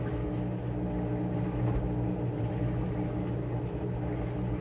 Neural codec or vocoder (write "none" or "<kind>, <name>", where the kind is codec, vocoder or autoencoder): none